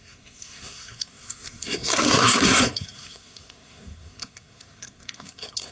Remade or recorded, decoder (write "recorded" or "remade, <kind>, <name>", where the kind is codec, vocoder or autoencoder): remade, codec, SNAC